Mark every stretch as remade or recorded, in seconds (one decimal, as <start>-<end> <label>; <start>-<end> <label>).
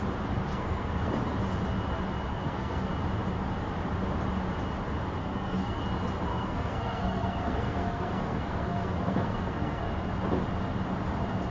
0.0-0.5 recorded; 0.5-1.1 remade; 1.1-2.3 recorded; 2.3-2.9 remade; 2.9-5.2 recorded; 5.2-5.8 remade; 5.8-6.3 recorded; 6.3-9.9 remade; 9.9-11.5 recorded